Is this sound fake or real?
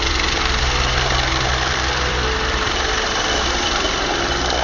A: fake